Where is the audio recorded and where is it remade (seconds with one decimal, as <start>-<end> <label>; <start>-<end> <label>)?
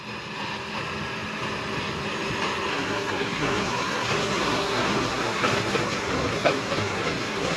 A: 0.0-2.7 recorded; 2.7-7.6 remade